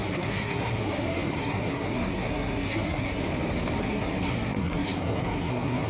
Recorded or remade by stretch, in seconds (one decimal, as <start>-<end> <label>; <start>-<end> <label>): 0.0-3.2 remade; 3.2-3.8 recorded; 3.8-5.9 remade